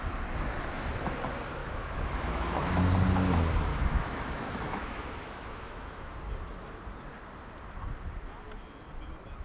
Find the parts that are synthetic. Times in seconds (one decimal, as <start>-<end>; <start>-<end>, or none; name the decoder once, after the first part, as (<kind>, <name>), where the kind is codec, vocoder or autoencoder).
1.6-2.6 (autoencoder, DAC-VAE); 3.7-6.1